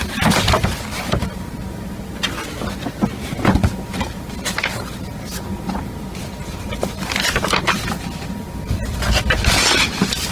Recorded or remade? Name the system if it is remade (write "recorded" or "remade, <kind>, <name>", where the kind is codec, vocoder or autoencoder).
recorded